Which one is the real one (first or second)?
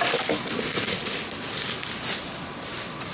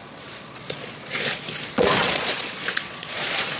first